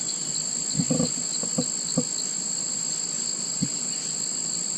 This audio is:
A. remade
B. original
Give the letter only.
B